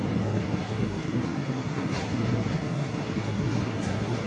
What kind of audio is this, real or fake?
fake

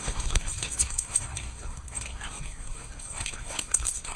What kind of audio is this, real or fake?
fake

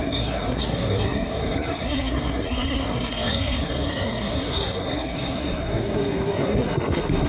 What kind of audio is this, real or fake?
fake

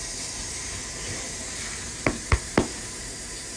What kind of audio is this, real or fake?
real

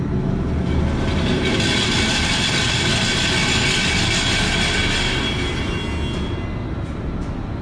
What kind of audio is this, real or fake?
real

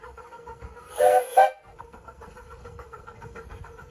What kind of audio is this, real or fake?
fake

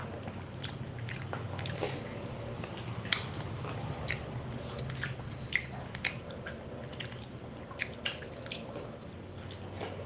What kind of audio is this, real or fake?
real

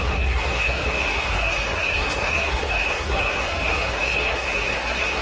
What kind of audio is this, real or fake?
fake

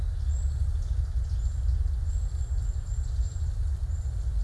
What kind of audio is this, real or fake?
real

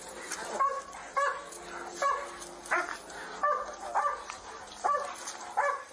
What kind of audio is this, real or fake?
real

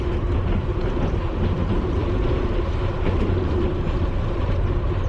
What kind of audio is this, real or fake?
real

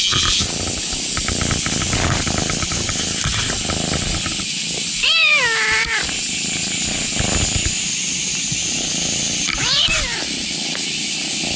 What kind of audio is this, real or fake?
real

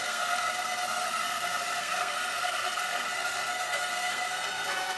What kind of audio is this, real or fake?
fake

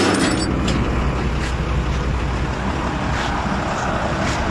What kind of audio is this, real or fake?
real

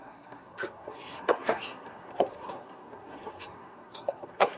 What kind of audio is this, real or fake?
fake